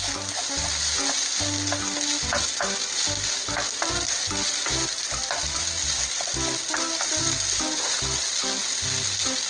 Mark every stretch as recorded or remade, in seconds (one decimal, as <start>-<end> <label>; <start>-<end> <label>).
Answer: 0.0-9.5 recorded